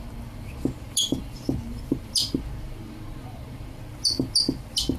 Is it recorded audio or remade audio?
recorded